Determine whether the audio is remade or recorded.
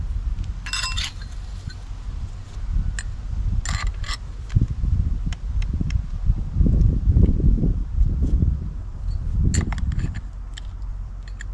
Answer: recorded